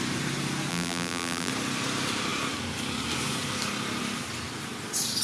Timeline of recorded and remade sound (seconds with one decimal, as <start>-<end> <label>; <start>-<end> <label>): 0.0-0.7 recorded; 0.7-1.5 remade; 1.5-5.2 recorded